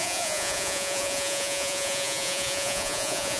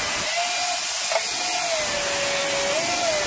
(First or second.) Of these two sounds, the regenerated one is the first